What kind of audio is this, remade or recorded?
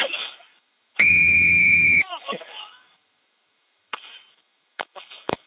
remade